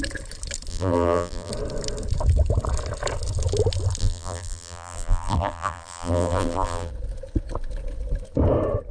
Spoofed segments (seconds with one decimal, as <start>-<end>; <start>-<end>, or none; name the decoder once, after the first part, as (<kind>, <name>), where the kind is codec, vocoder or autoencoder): 0.7-1.5 (vocoder, BigVGAN v2); 4.0-6.9